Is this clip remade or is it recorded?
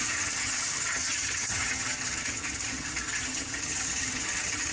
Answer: remade